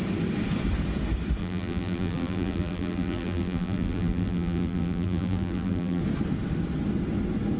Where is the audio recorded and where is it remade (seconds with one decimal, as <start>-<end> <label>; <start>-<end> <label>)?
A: 0.0-1.4 recorded; 1.4-6.0 remade; 6.0-7.6 recorded